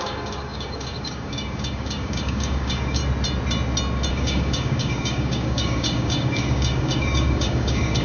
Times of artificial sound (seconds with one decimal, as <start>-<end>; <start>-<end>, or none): 0.0-3.0; 4.1-8.0